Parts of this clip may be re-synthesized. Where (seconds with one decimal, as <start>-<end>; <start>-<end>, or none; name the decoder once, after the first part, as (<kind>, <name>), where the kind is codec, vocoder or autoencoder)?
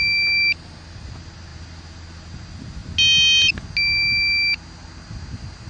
none